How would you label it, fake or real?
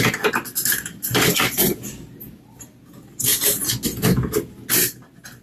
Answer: real